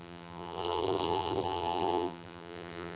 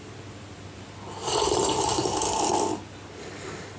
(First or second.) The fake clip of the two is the first